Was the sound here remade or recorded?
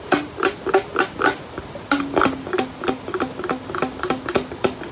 recorded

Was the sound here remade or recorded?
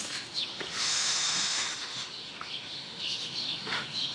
remade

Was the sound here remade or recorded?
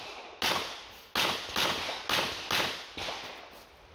recorded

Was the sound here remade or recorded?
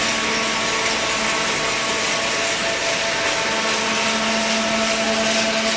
recorded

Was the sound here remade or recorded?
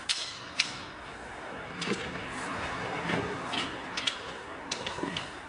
remade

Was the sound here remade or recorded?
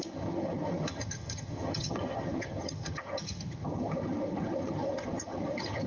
remade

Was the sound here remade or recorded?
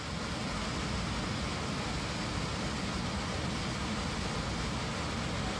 recorded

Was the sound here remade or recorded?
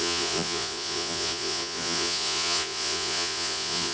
remade